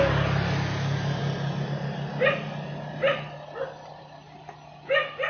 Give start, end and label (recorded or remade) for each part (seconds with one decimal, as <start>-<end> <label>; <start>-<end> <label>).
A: 0.0-5.3 recorded